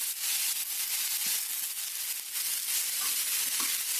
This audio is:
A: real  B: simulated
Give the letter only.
A